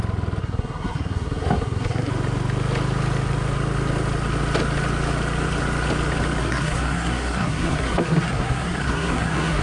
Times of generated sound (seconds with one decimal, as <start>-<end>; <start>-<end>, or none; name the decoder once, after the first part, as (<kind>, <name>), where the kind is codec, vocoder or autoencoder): 0.4-2.1 (codec, SNAC); 6.4-9.6